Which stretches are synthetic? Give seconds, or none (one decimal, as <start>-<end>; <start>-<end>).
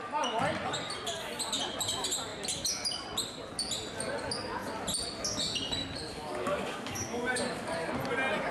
6.1-7.9